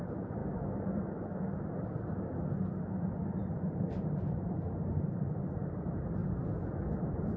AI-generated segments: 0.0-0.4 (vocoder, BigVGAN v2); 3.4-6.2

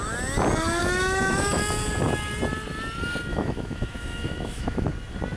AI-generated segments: 0.8-1.6 (autoencoder, DAC-VAE); 3.3-4.9

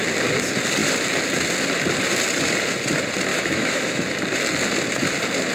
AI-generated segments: 3.3-4.0 (autoencoder, DAC-VAE)

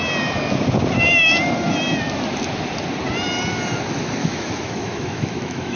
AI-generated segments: 4.2-5.8 (autoencoder, DAC-VAE)

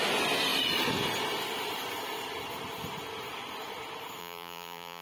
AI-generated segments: 4.2-5.0 (vocoder, BigVGAN v2)

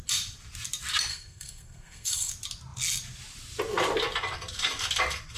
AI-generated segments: 1.1-2.3 (codec, SNAC)